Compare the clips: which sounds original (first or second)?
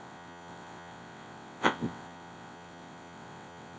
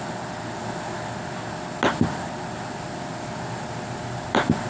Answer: second